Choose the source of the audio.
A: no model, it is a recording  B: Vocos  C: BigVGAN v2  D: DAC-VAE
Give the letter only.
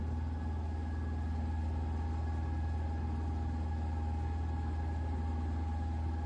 A